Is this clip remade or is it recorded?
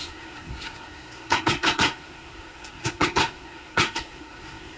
remade